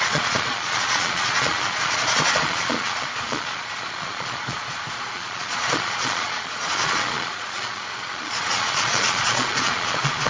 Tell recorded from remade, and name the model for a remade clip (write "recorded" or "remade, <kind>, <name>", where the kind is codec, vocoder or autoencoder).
remade, vocoder, Vocos